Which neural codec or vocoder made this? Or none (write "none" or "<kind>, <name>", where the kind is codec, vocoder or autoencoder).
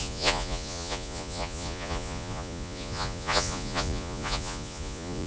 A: vocoder, Vocos